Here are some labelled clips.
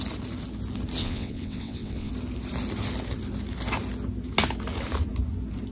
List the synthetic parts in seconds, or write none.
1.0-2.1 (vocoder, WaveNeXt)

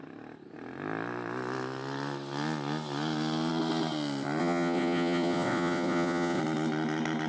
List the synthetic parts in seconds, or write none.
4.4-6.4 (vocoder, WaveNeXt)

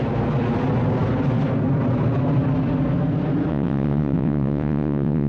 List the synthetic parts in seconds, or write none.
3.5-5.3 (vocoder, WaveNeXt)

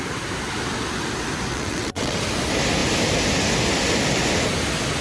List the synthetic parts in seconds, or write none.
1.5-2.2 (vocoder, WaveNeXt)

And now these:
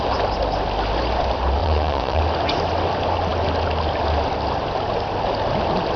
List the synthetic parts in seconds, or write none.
1.6-2.2 (vocoder, WaveNeXt)

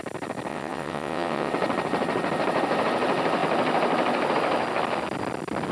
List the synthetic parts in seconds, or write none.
0.5-1.5 (vocoder, WaveNeXt)

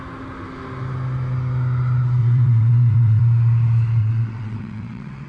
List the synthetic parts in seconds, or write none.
2.2-3.2 (vocoder, WaveNeXt); 4.0-5.3

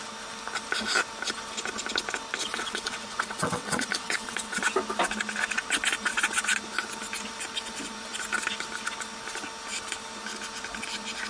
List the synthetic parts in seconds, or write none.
2.5-4.6 (vocoder, WaveNeXt)